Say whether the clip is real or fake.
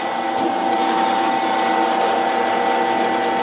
real